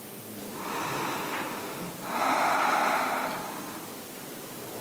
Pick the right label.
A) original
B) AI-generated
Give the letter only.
B